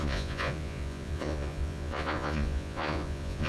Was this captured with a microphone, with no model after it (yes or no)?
no